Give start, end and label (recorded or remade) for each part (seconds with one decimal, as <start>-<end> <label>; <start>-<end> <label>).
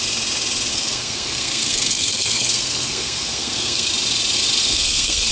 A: 0.0-0.7 recorded; 0.7-3.9 remade; 3.9-4.6 recorded; 4.6-5.3 remade